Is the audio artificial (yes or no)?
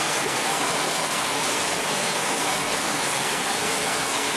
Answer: yes